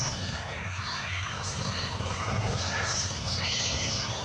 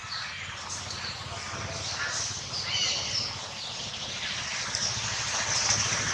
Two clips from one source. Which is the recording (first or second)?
second